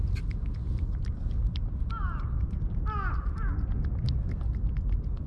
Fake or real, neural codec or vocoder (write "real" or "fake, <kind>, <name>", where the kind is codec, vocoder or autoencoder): real